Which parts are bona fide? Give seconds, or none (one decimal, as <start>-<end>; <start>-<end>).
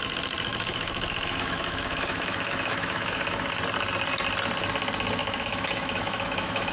0.0-0.5; 3.6-5.2